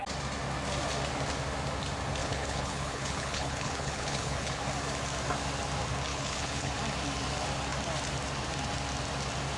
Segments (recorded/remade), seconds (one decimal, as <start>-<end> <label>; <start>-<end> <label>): 0.0-2.2 recorded; 2.2-4.6 remade; 4.6-6.1 recorded; 6.1-6.7 remade; 6.7-9.6 recorded